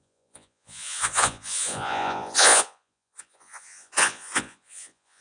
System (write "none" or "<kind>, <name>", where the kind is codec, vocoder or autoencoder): vocoder, Vocos